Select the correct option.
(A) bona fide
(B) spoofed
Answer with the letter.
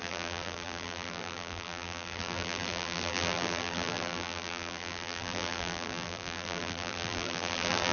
B